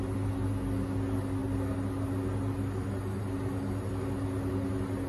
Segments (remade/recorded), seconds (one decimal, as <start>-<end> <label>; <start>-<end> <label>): 0.0-5.1 recorded